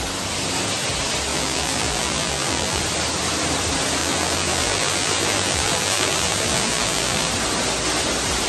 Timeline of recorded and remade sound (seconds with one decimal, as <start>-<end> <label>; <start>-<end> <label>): 0.0-1.3 recorded; 1.3-2.8 remade; 2.8-4.0 recorded; 4.0-7.3 remade; 7.3-8.5 recorded

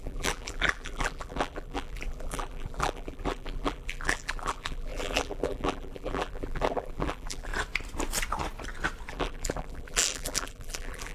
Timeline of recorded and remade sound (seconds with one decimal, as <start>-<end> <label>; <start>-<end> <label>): 0.0-7.5 remade; 7.5-9.1 recorded; 9.1-11.1 remade

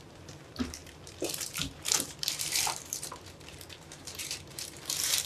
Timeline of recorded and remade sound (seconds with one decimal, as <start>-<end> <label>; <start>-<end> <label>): 0.0-5.3 remade

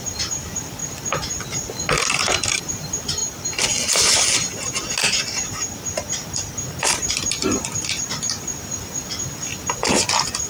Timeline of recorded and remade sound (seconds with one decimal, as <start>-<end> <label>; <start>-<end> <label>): 0.0-0.8 remade; 0.8-2.5 recorded; 2.5-3.2 remade; 3.2-6.8 recorded; 6.8-7.4 remade; 7.4-10.5 recorded

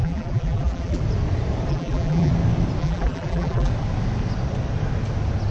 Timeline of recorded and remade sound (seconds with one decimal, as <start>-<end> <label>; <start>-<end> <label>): 0.0-1.0 remade; 1.0-1.7 recorded; 1.7-2.3 remade; 2.3-2.8 recorded; 2.8-3.7 remade; 3.7-5.5 recorded

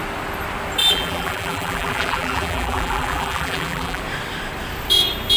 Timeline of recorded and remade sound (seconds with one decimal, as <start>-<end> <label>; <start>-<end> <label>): 0.0-0.8 recorded; 0.8-4.0 remade; 4.0-5.4 recorded